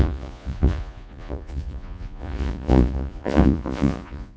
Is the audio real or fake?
fake